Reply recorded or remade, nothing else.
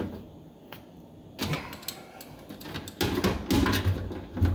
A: recorded